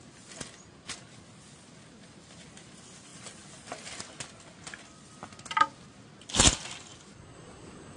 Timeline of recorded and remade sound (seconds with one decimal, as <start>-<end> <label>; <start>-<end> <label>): 0.0-8.0 recorded